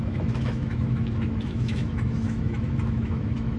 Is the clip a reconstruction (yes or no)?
yes